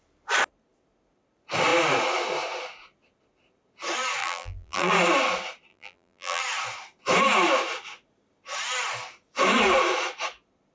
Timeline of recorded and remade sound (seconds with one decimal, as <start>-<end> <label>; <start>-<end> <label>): 0.0-4.2 recorded; 4.2-4.9 remade; 4.9-5.7 recorded; 5.7-6.4 remade; 6.4-10.7 recorded